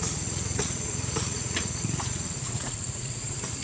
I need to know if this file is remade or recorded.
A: remade